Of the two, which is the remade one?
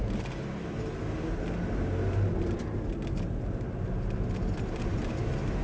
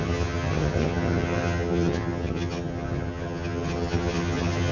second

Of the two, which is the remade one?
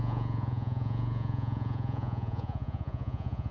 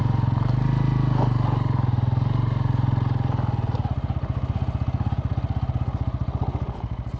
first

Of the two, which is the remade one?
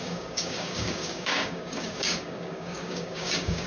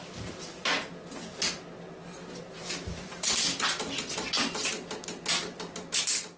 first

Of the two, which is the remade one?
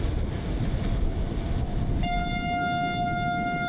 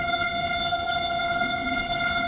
second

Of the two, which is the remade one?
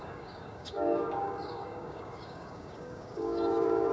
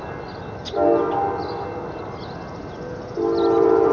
first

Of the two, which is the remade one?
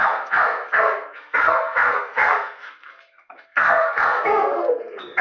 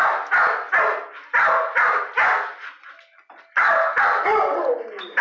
first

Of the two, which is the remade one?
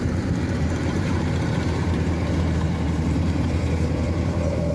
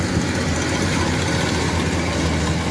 first